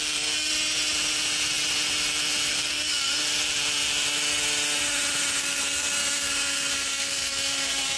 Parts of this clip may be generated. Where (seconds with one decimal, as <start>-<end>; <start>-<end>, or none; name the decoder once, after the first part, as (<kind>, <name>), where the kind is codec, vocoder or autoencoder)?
0.0-0.5 (codec, SNAC); 2.5-3.2; 5.4-8.0